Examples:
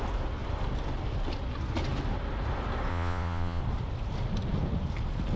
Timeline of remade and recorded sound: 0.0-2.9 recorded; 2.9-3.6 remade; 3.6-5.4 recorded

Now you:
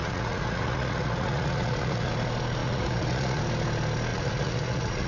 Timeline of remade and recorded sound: 0.0-2.1 remade; 2.1-2.6 recorded; 2.6-3.4 remade; 3.4-4.1 recorded; 4.1-5.1 remade

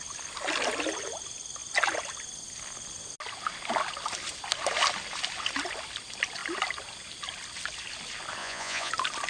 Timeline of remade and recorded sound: 0.0-8.4 recorded; 8.4-8.9 remade; 8.9-9.3 recorded

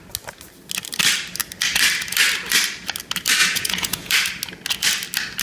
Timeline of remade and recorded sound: 0.0-3.4 recorded; 3.4-4.1 remade; 4.1-5.4 recorded